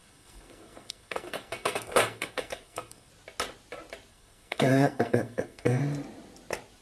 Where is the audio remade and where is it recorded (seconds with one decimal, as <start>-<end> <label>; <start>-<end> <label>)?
0.0-3.1 remade; 3.1-4.1 recorded; 4.1-5.8 remade; 5.8-6.8 recorded